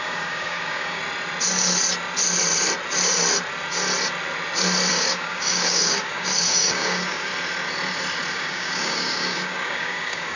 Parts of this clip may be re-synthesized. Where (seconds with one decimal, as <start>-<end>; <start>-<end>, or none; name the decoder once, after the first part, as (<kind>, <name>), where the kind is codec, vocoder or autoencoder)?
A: 0.0-1.0 (codec, DAC); 4.9-7.3; 8.3-10.4